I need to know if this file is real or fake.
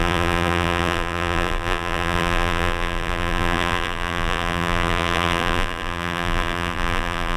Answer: fake